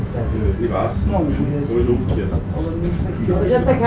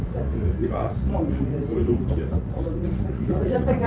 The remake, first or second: second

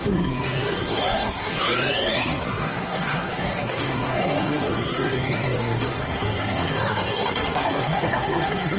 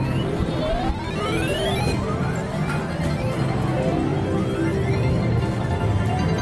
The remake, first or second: first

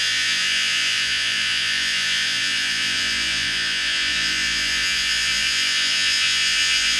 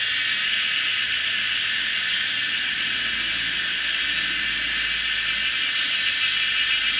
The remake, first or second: first